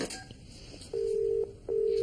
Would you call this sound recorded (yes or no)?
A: yes